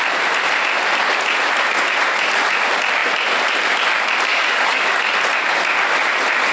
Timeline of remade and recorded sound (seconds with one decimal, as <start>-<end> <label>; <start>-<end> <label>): 0.0-4.3 recorded; 4.3-5.0 remade; 5.0-6.5 recorded